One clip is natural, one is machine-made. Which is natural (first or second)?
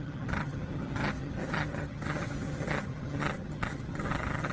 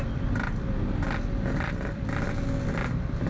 second